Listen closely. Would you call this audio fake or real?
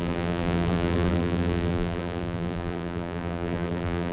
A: fake